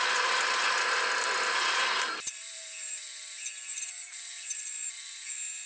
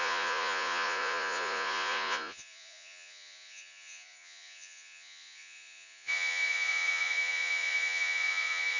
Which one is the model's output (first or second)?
second